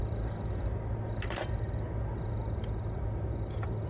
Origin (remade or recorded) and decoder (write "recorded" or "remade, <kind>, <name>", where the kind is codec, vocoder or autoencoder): recorded